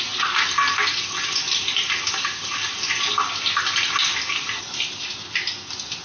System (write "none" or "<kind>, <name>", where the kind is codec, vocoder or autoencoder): none